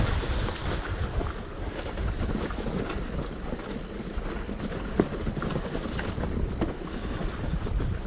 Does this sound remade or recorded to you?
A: recorded